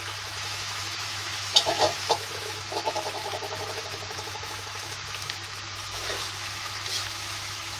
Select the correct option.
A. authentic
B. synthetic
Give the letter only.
B